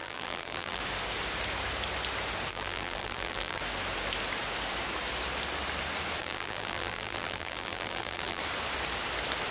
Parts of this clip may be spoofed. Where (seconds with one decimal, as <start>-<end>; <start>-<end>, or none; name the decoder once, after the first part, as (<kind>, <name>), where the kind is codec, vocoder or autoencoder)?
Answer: 0.0-0.8 (vocoder, BigVGAN v2); 2.5-3.6; 6.2-8.4